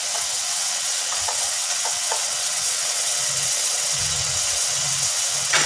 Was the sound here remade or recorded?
remade